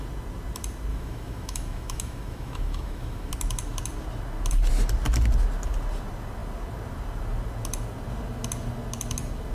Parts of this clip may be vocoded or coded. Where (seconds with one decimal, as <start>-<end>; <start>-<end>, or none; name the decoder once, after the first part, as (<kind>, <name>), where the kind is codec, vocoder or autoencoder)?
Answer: 0.9-3.3 (autoencoder, DAC-VAE)